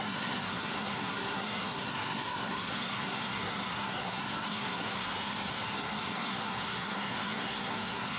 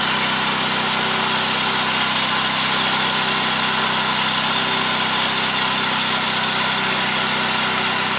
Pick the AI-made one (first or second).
first